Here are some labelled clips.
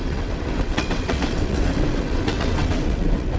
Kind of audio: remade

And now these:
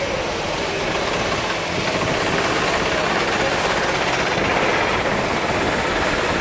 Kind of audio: recorded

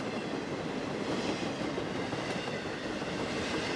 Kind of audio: recorded